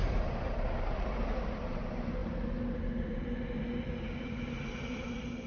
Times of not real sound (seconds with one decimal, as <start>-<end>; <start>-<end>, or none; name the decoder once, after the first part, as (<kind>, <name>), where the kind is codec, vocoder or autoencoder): 0.0-2.2 (vocoder, BigVGAN v2); 4.2-5.5

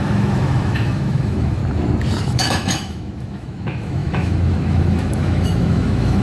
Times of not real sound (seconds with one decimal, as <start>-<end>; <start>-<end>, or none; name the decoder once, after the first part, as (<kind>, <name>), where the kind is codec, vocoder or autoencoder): 0.0-1.6 (autoencoder, DAC-VAE); 2.2-6.2

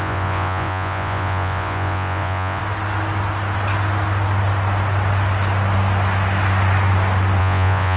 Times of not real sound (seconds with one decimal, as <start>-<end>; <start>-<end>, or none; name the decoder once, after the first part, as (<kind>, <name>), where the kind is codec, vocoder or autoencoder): 0.0-2.6 (vocoder, Vocos); 7.4-8.0

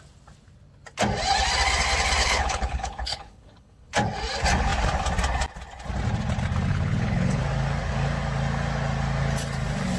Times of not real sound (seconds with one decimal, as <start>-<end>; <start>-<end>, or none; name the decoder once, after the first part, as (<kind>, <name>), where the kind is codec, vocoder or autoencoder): 2.2-3.9 (codec, HILCodec); 6.7-7.4

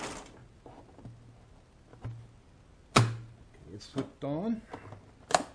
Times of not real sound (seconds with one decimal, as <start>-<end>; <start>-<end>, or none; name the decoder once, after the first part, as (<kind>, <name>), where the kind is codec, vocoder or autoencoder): none

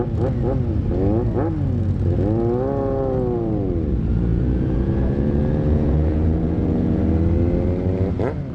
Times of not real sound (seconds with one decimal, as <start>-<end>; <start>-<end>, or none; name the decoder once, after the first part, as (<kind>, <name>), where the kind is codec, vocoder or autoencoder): 4.3-7.0 (vocoder, Vocos)

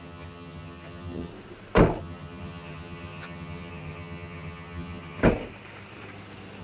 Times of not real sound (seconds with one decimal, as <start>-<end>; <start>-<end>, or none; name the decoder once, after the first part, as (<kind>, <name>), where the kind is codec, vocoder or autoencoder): 0.0-1.3 (vocoder, HiFi-GAN); 2.0-5.2

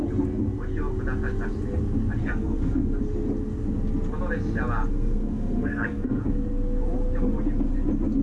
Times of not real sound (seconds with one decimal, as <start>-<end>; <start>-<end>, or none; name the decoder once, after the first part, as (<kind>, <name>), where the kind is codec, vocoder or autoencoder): 2.2-3.0 (codec, SNAC); 4.9-6.2